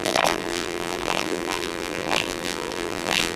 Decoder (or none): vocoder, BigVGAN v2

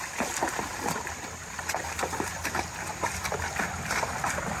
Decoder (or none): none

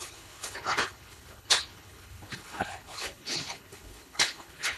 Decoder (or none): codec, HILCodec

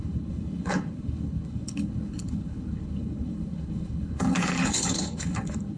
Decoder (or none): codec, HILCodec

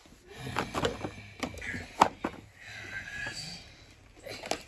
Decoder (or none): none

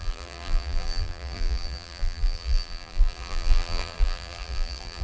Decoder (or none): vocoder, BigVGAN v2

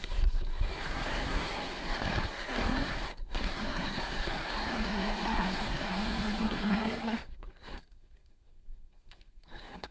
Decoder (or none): codec, SNAC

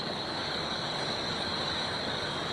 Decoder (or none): codec, DAC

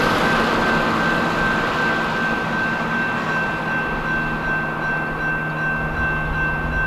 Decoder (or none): none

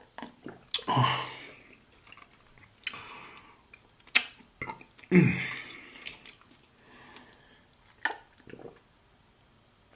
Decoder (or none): none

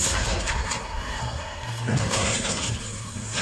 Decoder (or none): codec, SNAC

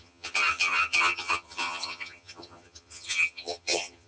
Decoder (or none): vocoder, HiFi-GAN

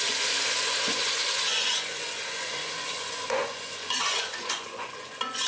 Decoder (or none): vocoder, Vocos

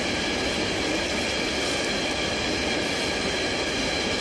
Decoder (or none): none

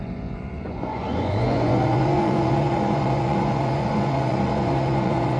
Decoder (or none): vocoder, Vocos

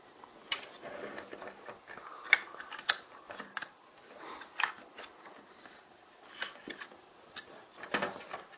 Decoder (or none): none